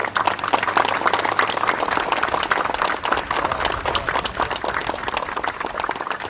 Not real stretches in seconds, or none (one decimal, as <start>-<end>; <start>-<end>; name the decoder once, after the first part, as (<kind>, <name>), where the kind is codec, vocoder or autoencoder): none